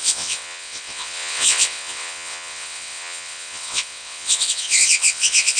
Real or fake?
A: fake